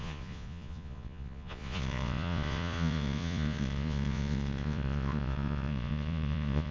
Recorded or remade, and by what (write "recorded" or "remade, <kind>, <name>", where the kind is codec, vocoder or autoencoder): remade, vocoder, Vocos